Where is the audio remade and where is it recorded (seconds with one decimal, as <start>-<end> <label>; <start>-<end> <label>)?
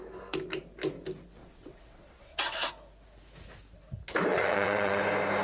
0.0-1.4 recorded; 1.4-2.7 remade; 2.7-4.3 recorded; 4.3-5.0 remade; 5.0-5.4 recorded